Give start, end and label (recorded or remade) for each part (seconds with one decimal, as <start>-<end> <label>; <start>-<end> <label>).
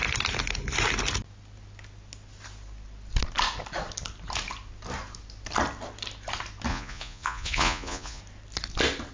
0.0-6.7 recorded; 6.7-8.2 remade; 8.2-9.1 recorded